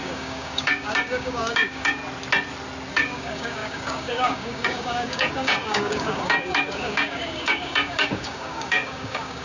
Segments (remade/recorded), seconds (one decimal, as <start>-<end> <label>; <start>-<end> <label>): 0.0-2.0 remade; 2.0-2.9 recorded; 2.9-9.4 remade